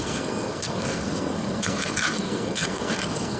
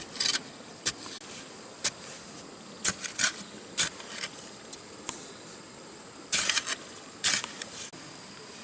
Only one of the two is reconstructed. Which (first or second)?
first